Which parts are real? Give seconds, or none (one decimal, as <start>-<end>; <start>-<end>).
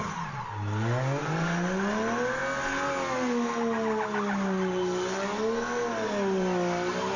0.0-7.2